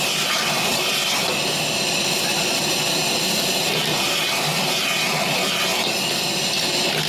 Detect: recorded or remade recorded